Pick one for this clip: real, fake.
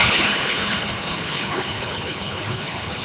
fake